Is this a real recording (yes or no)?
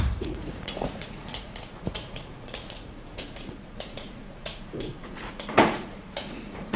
no